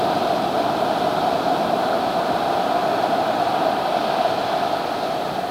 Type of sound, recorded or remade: recorded